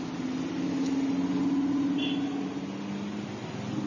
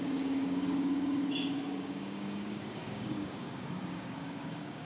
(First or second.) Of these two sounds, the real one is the first